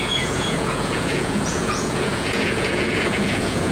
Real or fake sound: fake